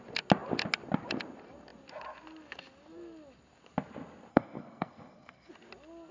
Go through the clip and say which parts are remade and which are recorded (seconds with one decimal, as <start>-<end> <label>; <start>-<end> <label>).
0.0-4.3 recorded; 4.3-5.5 remade; 5.5-6.1 recorded